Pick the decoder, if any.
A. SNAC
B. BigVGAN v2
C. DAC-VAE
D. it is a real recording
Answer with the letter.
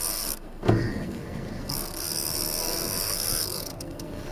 A